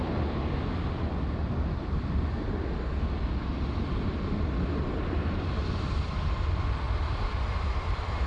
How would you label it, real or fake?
real